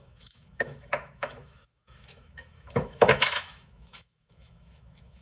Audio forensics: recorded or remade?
remade